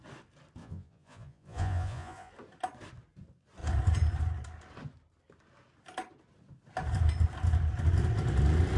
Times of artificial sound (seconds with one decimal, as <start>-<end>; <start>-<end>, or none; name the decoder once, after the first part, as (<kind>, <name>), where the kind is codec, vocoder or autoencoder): 0.6-2.3 (vocoder, Vocos)